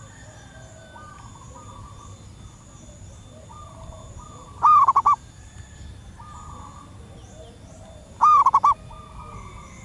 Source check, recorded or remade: recorded